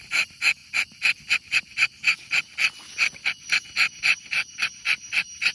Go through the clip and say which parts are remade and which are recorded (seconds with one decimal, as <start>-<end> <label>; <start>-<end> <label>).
0.0-5.5 recorded